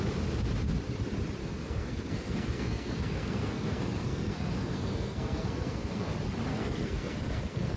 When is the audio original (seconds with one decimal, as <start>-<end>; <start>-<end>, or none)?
0.0-1.4; 6.1-6.5